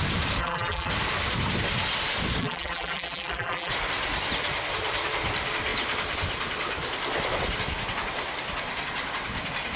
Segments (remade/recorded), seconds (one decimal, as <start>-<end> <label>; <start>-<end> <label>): 0.0-0.4 recorded; 0.4-0.9 remade; 0.9-2.4 recorded; 2.4-3.7 remade; 3.7-9.8 recorded